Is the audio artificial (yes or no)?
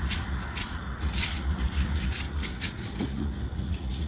yes